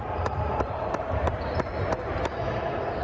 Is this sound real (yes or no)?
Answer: no